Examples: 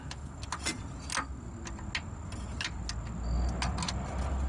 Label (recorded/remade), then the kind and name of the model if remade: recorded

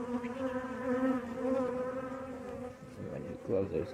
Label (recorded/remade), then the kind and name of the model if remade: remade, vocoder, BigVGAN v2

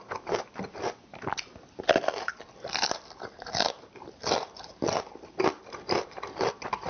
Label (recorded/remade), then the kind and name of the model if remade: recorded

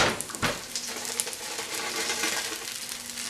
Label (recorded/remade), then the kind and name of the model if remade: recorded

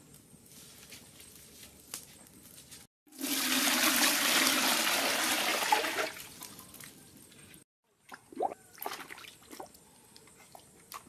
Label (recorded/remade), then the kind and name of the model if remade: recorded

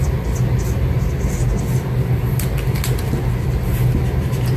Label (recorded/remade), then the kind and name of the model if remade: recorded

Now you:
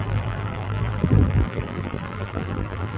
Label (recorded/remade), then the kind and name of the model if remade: remade, vocoder, BigVGAN v2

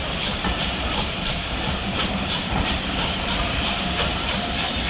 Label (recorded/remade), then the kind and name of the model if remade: remade, vocoder, BigVGAN v2